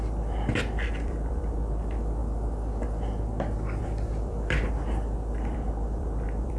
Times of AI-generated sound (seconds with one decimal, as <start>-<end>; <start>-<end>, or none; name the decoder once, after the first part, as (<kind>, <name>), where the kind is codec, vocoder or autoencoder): 0.0-2.2 (vocoder, BigVGAN v2); 3.8-6.6